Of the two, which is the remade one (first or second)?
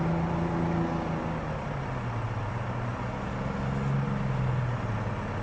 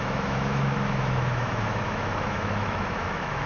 second